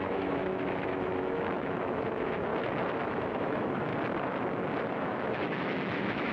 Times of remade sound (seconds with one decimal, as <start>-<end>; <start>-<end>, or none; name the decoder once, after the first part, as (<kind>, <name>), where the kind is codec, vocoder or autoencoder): 0.0-2.5 (autoencoder, DAC-VAE); 3.1-3.9; 4.9-6.3